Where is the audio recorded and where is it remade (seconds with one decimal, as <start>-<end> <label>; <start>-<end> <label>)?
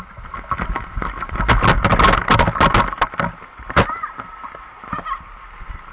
0.0-5.9 recorded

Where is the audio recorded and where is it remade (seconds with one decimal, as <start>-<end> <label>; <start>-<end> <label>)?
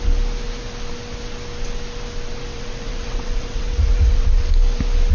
0.0-2.5 recorded; 2.5-4.5 remade; 4.5-5.1 recorded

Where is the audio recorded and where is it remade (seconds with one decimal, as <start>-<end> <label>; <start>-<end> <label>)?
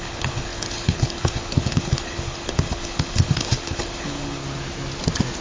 0.0-4.4 remade; 4.4-5.4 recorded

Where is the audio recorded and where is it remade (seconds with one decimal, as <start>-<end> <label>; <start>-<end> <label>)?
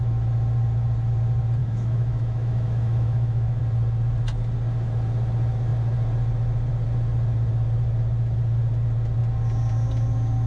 0.0-1.6 recorded; 1.6-3.6 remade; 3.6-10.5 recorded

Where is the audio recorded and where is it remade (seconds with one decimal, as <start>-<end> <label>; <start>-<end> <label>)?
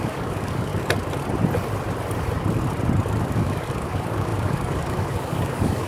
0.0-0.7 remade; 0.7-3.2 recorded; 3.2-5.9 remade